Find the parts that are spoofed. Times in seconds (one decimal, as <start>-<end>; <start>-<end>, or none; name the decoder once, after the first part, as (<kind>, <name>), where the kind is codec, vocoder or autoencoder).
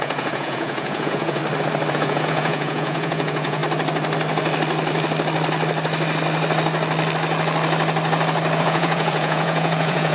0.0-1.4 (vocoder, Vocos); 1.9-3.6; 8.6-10.1